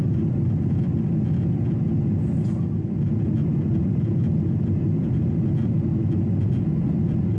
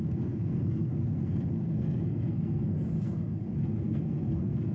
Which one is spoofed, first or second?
second